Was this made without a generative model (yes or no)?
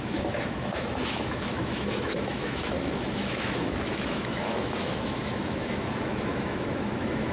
no